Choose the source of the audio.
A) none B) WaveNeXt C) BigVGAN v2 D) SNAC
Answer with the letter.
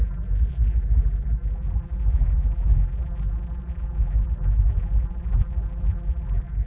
C